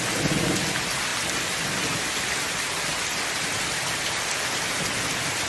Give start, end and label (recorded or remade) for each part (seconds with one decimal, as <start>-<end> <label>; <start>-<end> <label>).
0.0-5.5 recorded

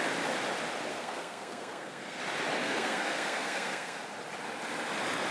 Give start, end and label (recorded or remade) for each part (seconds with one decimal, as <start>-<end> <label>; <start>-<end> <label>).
0.0-0.9 recorded; 0.9-2.2 remade; 2.2-2.6 recorded; 2.6-4.0 remade; 4.0-5.3 recorded

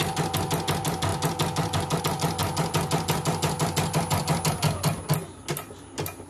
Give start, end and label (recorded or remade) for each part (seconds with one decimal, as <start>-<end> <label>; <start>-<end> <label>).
0.0-6.3 recorded

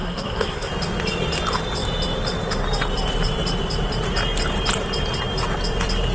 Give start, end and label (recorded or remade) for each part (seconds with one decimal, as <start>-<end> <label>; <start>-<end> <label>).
0.0-0.7 remade; 0.7-6.1 recorded